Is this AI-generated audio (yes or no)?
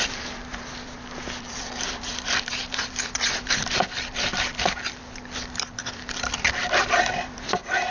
yes